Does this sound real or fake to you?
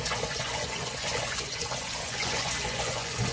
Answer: fake